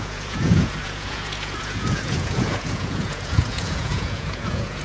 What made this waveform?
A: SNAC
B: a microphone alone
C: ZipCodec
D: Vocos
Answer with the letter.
D